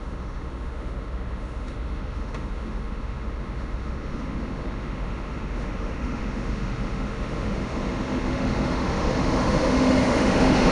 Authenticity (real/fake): fake